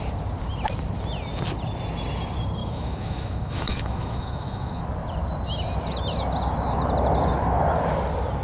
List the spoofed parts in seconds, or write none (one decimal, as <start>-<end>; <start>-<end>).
2.6-4.8